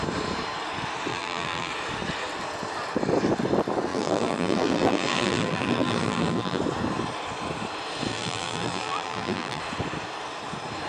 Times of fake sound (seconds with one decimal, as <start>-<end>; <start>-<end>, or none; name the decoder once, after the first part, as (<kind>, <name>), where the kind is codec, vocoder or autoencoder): 1.1-1.7 (vocoder, BigVGAN v2); 3.9-6.6; 8.1-9.6